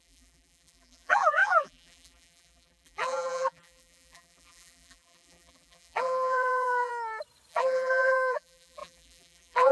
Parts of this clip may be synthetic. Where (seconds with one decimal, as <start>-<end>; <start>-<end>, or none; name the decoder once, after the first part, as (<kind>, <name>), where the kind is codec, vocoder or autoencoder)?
0.0-6.9 (vocoder, BigVGAN v2); 7.5-9.7